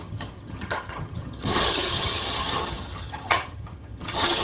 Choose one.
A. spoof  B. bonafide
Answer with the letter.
A